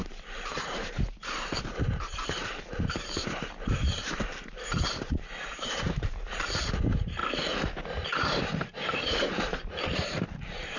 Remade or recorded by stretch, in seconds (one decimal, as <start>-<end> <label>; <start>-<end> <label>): 0.0-7.2 remade; 7.2-8.1 recorded; 8.1-10.8 remade